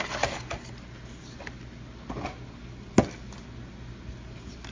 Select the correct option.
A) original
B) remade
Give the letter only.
A